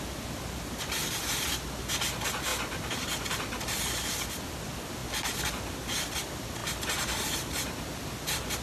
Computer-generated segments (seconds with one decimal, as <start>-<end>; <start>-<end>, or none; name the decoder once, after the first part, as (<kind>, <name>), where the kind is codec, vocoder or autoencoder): none